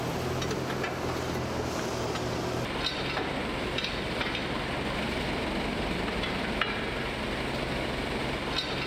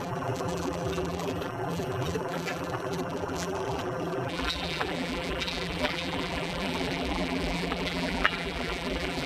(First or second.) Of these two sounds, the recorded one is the first